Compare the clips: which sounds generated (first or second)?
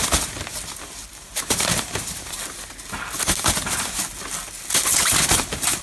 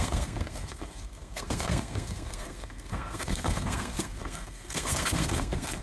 second